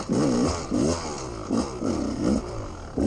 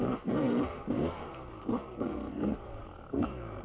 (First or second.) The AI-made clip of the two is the second